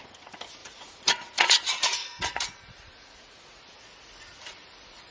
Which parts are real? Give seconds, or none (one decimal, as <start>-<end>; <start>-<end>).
0.0-0.6; 1.5-2.0